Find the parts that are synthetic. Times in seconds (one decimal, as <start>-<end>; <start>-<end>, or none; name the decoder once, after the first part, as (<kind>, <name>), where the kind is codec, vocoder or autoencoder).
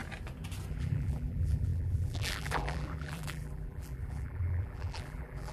0.7-5.5 (vocoder, BigVGAN v2)